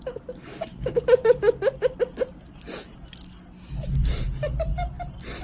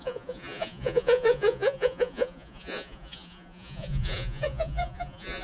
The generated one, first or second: second